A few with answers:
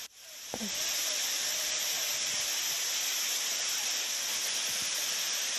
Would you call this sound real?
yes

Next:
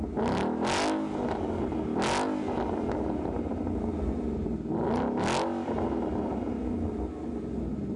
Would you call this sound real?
yes